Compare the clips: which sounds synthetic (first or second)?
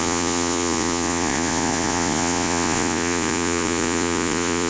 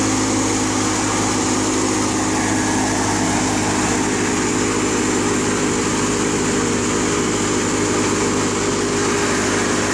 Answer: first